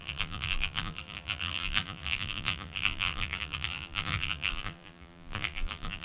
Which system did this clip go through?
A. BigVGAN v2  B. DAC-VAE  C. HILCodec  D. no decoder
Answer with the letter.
A